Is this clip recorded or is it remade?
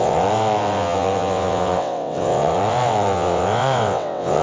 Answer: remade